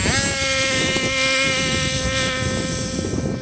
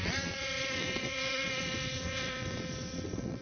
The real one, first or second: first